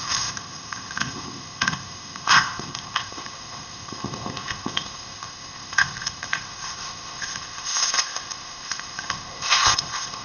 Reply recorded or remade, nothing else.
remade